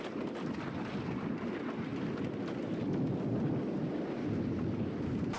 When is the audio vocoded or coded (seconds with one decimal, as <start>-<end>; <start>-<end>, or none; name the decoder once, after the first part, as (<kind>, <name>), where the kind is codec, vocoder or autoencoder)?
none